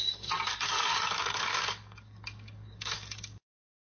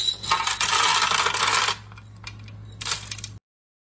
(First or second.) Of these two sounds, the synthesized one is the first